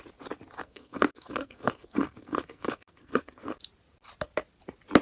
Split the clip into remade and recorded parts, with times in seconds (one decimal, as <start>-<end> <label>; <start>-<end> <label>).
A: 0.0-0.6 recorded; 0.6-3.6 remade; 3.6-5.0 recorded